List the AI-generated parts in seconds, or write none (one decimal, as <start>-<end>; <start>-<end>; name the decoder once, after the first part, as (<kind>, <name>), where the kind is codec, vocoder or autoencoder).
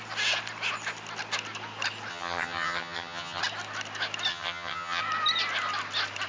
2.1-3.4 (vocoder, HiFi-GAN); 4.3-5.0